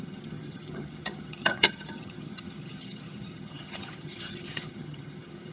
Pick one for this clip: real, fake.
fake